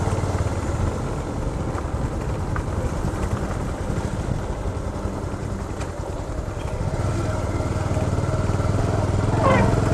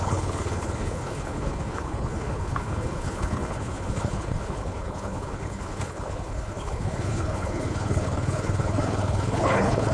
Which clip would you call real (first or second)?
first